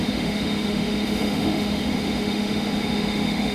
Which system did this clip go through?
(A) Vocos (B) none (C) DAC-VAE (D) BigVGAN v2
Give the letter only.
C